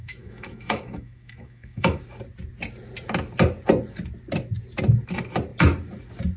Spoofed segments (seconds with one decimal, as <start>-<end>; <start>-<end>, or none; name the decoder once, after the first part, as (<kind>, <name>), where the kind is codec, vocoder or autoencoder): 0.0-2.0 (autoencoder, DAC-VAE)